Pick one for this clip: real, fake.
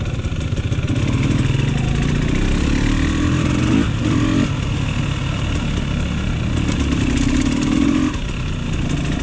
real